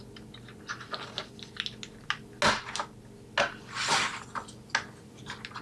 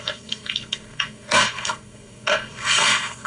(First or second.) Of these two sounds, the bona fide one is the first